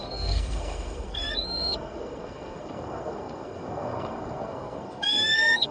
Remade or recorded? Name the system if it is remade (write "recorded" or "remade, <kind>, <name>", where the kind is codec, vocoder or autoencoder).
remade, codec, SNAC